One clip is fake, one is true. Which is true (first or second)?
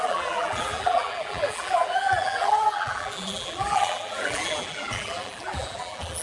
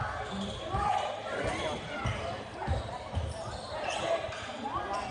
second